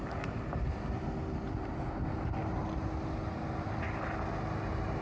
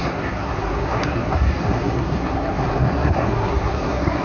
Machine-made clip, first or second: second